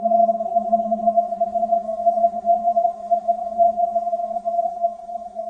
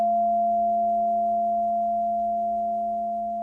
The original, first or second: second